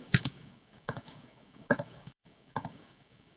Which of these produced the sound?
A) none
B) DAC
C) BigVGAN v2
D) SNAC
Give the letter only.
B